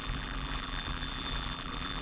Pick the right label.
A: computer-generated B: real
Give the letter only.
A